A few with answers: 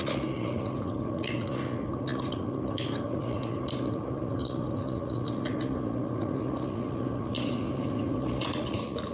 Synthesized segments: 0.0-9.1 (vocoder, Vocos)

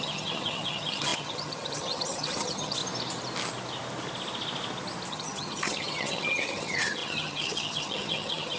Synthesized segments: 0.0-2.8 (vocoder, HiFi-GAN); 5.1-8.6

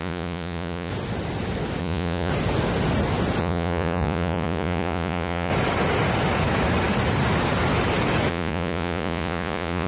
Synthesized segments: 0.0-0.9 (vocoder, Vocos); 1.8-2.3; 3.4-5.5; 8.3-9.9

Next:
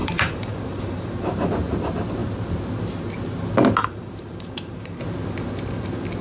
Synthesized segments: 0.0-1.5 (vocoder, BigVGAN v2); 3.8-5.0

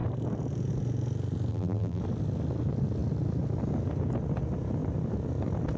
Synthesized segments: 1.5-2.0 (vocoder, BigVGAN v2)